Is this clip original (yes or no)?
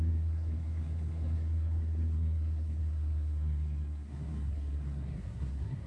no